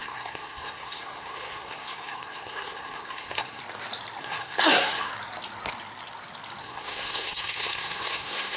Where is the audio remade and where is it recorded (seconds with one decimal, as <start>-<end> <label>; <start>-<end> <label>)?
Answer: 0.0-3.6 remade; 3.6-4.2 recorded; 4.2-5.1 remade; 5.1-6.6 recorded; 6.6-8.6 remade